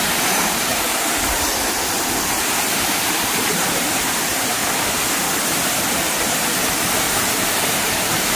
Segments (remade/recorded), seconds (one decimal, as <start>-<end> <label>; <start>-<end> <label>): 0.0-0.9 remade; 0.9-2.5 recorded; 2.5-4.6 remade; 4.6-7.3 recorded; 7.3-8.4 remade